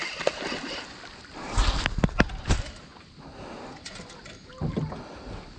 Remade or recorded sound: recorded